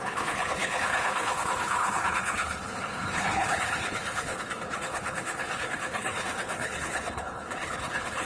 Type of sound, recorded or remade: remade